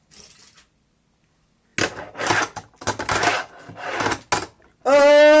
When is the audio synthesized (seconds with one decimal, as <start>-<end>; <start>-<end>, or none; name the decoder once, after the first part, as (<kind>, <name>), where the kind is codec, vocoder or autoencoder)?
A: none